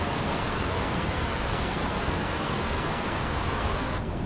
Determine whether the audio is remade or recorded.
remade